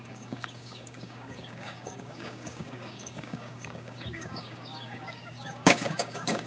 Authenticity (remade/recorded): remade